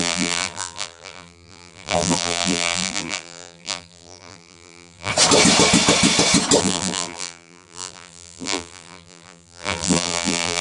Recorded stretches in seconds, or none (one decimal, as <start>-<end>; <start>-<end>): 5.1-6.6

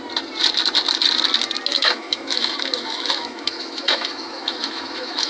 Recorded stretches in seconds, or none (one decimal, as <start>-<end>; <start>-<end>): 0.0-1.7

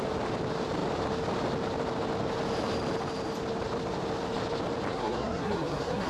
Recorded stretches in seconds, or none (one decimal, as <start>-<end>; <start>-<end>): 0.0-4.9

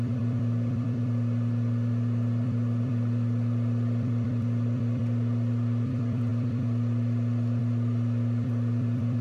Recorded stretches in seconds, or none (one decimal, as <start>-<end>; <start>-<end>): none